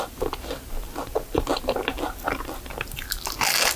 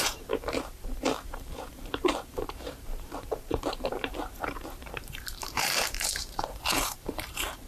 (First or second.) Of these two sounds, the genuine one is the first